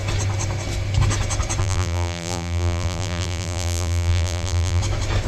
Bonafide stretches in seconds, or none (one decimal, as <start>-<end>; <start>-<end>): 0.0-1.6; 4.8-5.3